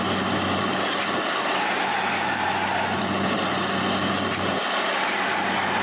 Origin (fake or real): real